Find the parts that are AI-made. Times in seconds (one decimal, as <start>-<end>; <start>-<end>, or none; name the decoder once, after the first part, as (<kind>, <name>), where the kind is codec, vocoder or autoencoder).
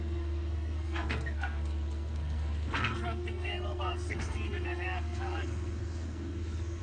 0.0-6.8 (codec, SNAC)